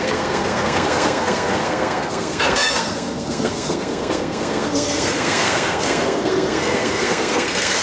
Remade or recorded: remade